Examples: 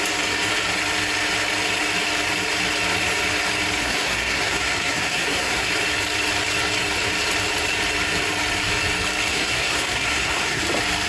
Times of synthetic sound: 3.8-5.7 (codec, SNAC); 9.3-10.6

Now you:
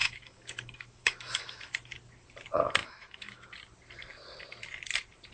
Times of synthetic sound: 0.0-1.7 (autoencoder, DAC-VAE); 2.8-3.5

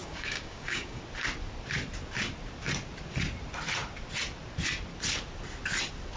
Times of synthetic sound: 0.0-1.0 (codec, DAC)

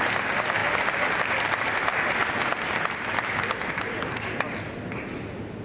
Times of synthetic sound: none

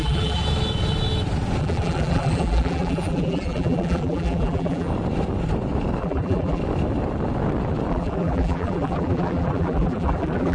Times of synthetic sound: 0.0-0.4 (vocoder, BigVGAN v2); 1.6-4.9; 6.0-6.6; 7.9-10.5